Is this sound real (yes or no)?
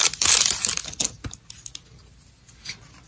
yes